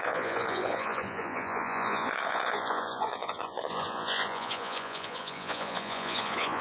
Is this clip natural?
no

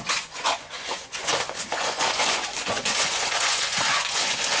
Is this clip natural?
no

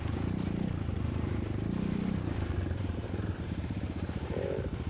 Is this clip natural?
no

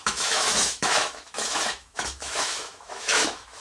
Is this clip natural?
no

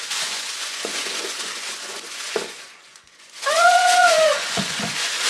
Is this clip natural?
no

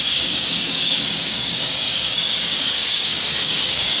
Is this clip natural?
no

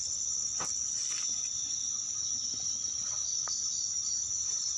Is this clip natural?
yes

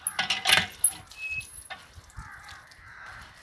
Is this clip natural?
yes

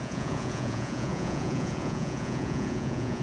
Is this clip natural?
no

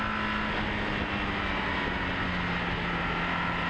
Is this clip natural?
yes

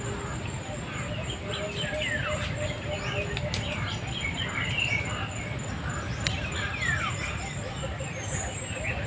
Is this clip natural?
yes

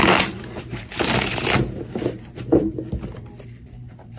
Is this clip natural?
no